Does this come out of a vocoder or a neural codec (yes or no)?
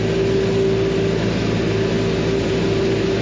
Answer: no